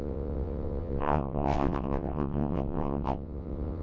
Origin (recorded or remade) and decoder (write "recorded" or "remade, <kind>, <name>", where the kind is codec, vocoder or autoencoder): remade, vocoder, WaveNeXt